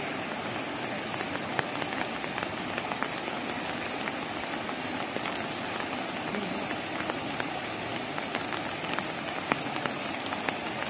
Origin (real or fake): real